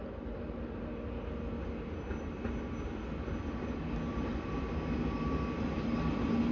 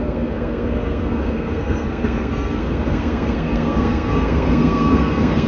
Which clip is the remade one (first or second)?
second